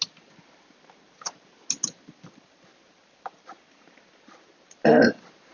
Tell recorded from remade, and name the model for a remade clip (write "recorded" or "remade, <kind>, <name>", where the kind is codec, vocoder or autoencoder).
recorded